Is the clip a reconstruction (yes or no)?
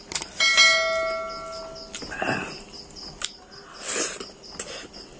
no